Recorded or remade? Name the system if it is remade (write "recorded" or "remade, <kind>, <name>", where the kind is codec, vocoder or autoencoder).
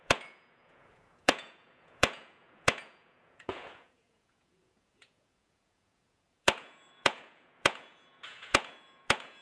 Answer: remade, vocoder, Vocos